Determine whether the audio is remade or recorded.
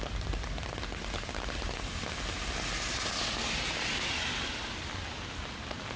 recorded